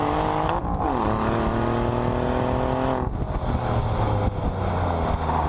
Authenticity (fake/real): real